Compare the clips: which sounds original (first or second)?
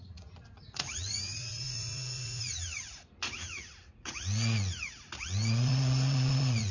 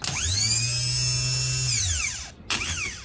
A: second